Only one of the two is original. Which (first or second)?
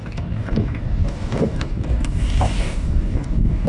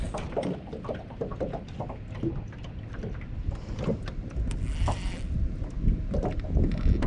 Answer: second